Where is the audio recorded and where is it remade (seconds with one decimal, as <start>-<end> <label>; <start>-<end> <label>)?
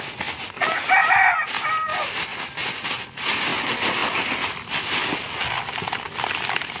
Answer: 0.0-6.8 recorded